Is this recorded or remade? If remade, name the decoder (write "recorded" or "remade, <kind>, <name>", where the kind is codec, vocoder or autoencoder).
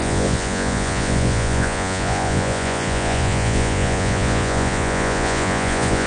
remade, vocoder, Vocos